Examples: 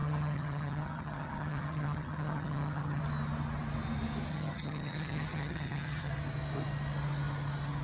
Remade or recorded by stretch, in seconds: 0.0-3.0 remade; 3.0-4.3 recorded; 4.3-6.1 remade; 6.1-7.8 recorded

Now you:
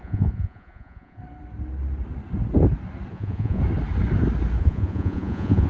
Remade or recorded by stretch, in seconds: 0.0-1.2 remade; 1.2-3.1 recorded; 3.1-3.6 remade; 3.6-4.6 recorded; 4.6-5.7 remade

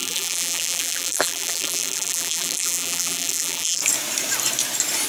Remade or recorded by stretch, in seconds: 0.0-3.8 remade; 3.8-5.1 recorded

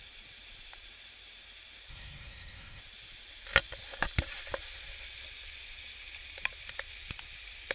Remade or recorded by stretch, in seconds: 0.0-1.9 recorded; 1.9-2.8 remade; 2.8-7.7 recorded

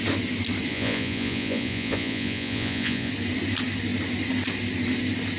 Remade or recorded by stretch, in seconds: 0.0-0.7 recorded; 0.7-3.1 remade; 3.1-5.4 recorded

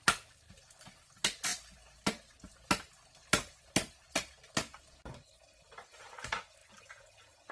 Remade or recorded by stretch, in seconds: 0.0-7.5 recorded

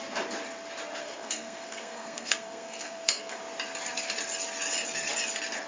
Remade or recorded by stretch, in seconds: 0.0-1.0 recorded; 1.0-3.4 remade; 3.4-5.7 recorded